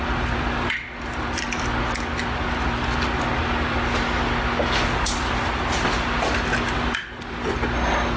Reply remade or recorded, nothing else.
recorded